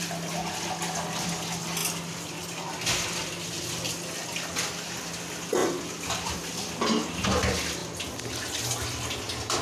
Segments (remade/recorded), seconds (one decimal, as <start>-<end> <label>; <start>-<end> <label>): 0.0-5.6 recorded; 5.6-6.7 remade; 6.7-9.6 recorded